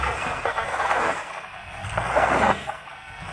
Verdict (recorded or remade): remade